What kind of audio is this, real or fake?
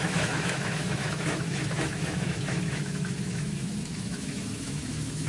fake